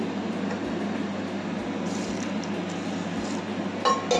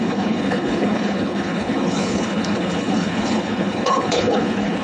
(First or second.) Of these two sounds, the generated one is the second